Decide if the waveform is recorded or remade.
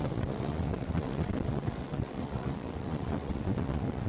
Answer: remade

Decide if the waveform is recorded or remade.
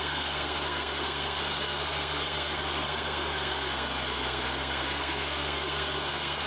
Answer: remade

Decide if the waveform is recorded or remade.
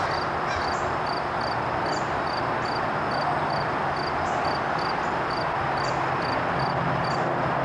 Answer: recorded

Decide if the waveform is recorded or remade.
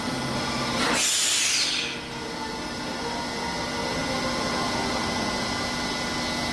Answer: recorded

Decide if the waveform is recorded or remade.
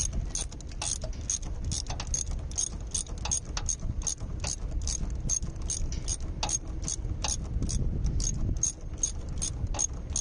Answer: recorded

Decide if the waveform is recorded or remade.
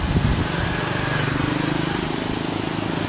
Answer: recorded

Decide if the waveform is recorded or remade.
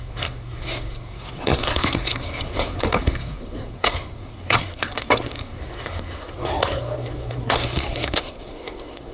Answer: remade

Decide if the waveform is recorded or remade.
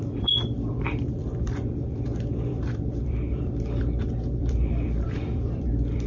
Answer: remade